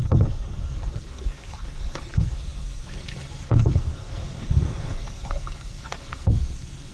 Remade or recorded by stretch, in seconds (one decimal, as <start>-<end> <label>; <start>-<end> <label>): 0.0-6.9 remade